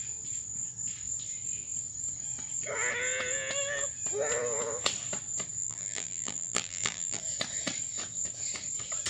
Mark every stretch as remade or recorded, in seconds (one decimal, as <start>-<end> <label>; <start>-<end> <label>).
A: 0.0-5.6 recorded; 5.6-7.2 remade; 7.2-9.1 recorded